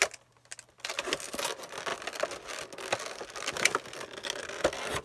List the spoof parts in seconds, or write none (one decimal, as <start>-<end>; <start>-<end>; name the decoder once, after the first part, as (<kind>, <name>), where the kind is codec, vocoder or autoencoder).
none